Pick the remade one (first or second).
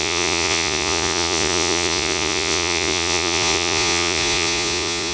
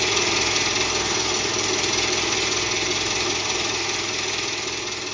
first